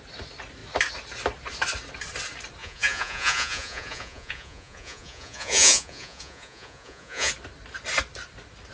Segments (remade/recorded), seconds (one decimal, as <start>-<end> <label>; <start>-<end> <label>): 0.0-2.6 recorded; 2.6-7.3 remade; 7.3-8.7 recorded